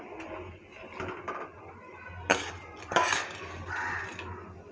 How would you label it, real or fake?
real